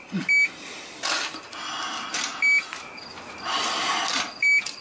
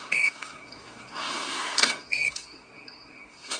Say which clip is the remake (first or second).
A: second